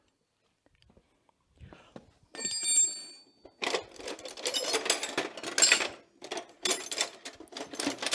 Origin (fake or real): real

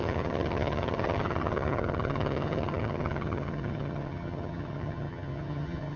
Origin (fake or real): fake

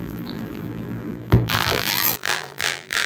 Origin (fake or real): fake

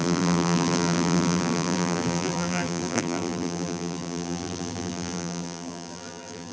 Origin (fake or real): fake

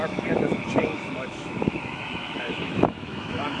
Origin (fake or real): fake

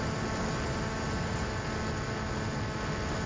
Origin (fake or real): real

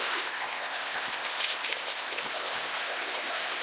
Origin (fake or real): fake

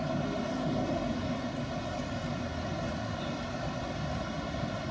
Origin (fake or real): real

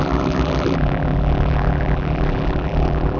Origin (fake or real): fake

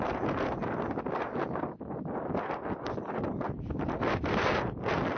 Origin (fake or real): real